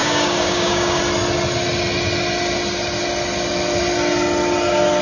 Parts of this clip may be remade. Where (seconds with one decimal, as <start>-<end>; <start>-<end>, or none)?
0.0-1.0